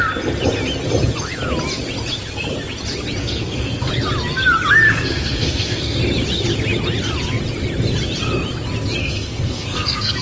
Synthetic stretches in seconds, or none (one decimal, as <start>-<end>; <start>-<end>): 3.2-3.9; 4.9-6.0; 9.0-10.2